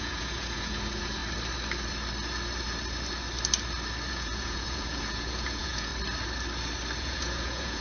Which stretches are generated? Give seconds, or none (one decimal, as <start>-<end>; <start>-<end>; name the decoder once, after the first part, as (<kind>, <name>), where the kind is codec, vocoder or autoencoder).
0.0-1.2 (vocoder, Vocos); 4.1-5.9; 7.0-7.8

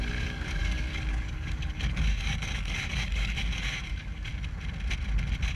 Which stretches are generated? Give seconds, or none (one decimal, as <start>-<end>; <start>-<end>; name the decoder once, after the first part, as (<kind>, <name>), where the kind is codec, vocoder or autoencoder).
0.0-4.3 (codec, DAC)

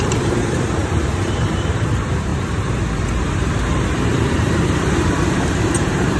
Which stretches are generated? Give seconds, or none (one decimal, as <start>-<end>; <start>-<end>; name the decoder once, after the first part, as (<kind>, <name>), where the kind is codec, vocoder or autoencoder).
0.0-6.2 (vocoder, BigVGAN v2)

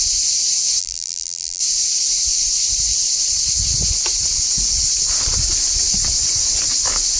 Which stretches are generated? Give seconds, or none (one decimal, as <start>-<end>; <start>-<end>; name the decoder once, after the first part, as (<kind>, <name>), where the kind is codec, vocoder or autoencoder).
0.8-1.6 (vocoder, BigVGAN v2)